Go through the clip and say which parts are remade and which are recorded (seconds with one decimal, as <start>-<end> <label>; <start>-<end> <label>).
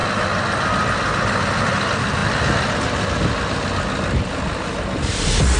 0.0-5.6 recorded